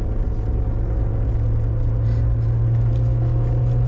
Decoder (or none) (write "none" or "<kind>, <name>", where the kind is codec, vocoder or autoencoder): none